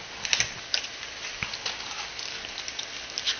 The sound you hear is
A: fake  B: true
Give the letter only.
B